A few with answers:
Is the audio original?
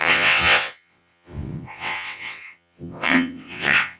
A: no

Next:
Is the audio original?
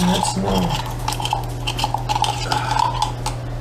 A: yes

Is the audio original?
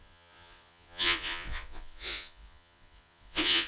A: no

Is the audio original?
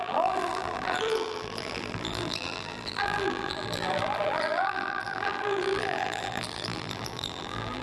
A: no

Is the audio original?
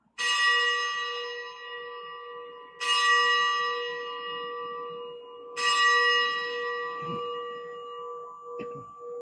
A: yes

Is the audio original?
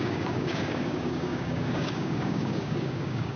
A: no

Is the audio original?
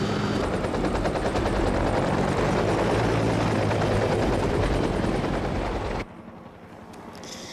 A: yes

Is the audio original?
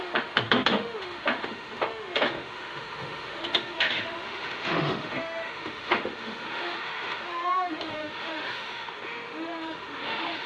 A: no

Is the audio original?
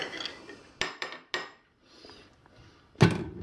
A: yes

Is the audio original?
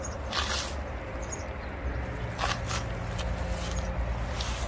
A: yes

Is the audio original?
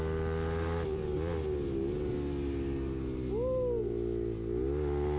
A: yes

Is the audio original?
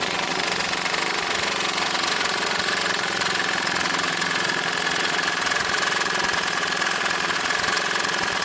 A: no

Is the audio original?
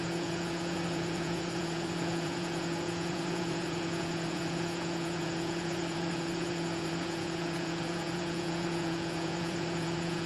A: no